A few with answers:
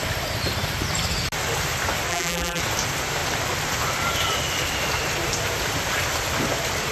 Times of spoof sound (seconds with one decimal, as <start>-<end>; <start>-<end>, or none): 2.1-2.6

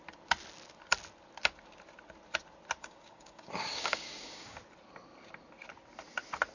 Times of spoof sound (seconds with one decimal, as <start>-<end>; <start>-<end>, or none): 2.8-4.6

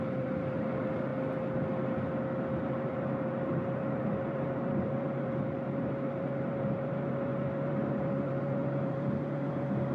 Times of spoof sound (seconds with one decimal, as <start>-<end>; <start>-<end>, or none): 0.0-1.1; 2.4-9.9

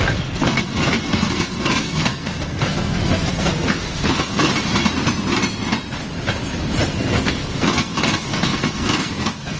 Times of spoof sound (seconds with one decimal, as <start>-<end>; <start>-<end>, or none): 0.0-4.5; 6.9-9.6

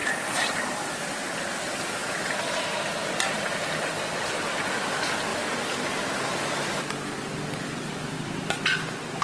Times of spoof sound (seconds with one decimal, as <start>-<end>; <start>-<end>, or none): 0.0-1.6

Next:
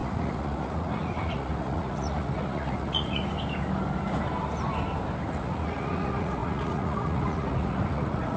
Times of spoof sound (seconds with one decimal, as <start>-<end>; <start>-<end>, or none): 0.0-3.2; 5.3-8.4

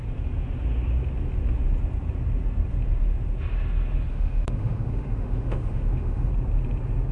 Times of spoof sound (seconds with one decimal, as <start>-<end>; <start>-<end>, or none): 4.1-6.3